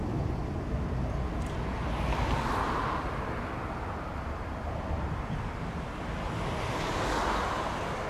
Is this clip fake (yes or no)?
no